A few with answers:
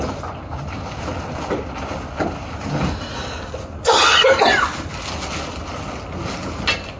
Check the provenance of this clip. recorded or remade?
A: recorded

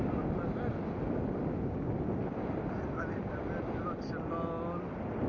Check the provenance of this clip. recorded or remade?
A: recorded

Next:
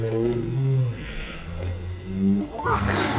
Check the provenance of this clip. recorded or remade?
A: remade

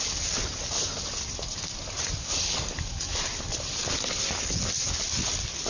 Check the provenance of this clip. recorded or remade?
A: recorded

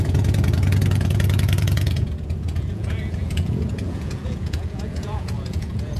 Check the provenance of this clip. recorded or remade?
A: remade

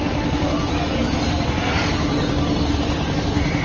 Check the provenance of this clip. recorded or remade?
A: recorded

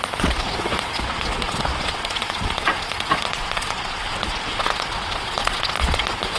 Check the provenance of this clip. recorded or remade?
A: remade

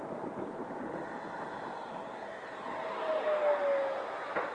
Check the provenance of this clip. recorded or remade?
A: recorded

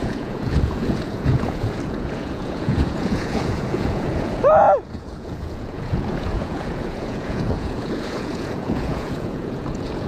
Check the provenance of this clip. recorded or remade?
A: remade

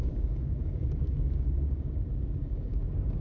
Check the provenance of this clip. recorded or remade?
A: remade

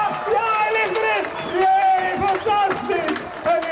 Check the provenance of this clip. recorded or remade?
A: recorded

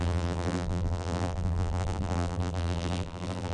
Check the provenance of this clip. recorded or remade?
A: remade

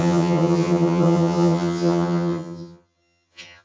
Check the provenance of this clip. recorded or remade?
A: remade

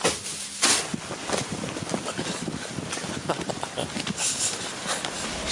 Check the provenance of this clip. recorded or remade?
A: recorded